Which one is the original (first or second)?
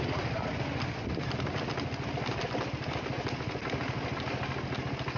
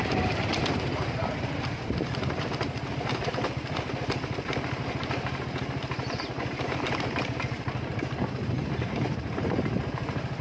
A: first